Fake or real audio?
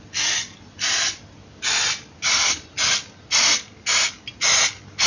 real